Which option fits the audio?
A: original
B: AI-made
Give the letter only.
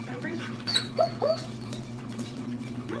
B